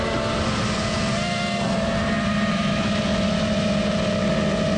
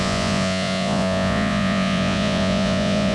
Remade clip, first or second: second